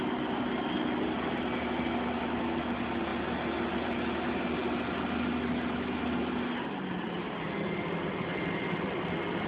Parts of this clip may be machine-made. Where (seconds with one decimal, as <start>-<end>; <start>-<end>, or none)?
none